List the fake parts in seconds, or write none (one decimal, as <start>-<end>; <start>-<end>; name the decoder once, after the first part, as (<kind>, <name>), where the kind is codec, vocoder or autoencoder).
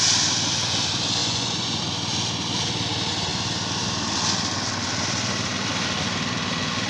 1.2-1.8 (vocoder, Vocos)